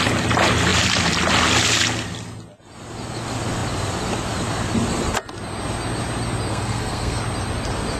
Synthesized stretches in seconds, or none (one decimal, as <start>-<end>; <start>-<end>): 6.5-7.2